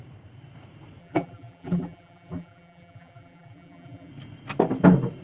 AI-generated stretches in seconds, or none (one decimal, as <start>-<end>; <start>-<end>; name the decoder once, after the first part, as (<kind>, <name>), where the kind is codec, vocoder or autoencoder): 1.0-4.1 (vocoder, BigVGAN v2)